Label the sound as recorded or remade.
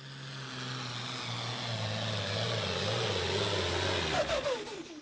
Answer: recorded